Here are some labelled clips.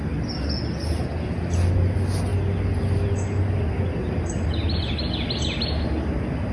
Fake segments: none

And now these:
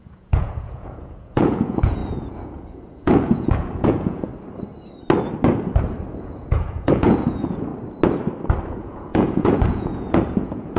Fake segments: 0.0-4.3 (vocoder, Vocos); 6.2-7.7; 8.7-10.8

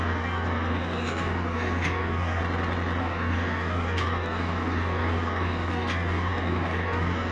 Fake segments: 0.0-2.4 (codec, DAC); 3.0-7.3

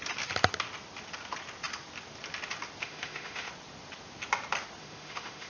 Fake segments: 2.8-3.5 (autoencoder, DAC-VAE); 4.8-5.5

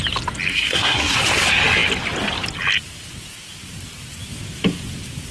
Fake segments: 0.5-1.2 (codec, SNAC)

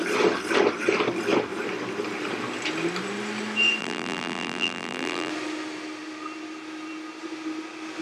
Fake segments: 3.8-5.3 (vocoder, BigVGAN v2)